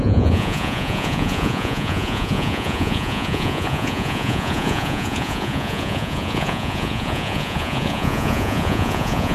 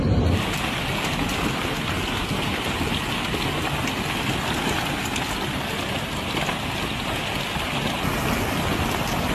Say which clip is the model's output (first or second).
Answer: first